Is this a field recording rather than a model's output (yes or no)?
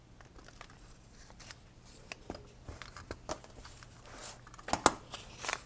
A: yes